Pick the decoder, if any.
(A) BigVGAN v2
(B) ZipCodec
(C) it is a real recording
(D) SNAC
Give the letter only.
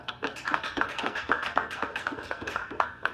D